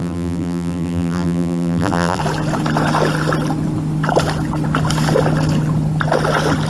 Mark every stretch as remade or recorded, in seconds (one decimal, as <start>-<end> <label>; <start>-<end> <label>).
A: 0.0-2.2 remade; 2.2-6.7 recorded